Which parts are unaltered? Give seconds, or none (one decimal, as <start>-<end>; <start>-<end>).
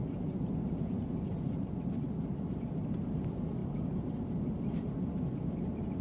0.0-6.0